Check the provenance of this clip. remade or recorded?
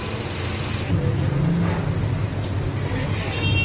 recorded